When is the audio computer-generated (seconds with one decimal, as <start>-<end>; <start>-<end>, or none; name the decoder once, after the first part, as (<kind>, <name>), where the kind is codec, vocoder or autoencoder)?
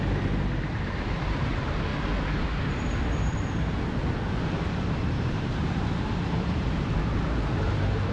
0.0-1.9 (vocoder, BigVGAN v2); 2.4-8.1